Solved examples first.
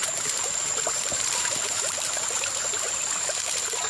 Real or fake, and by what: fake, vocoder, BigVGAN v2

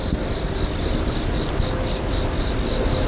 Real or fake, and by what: real